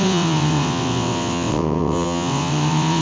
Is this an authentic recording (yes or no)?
no